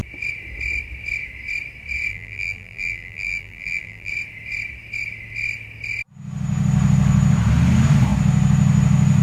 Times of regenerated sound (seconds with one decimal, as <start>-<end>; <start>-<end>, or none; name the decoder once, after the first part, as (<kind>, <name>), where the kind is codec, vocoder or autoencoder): 2.1-4.1 (vocoder, BigVGAN v2)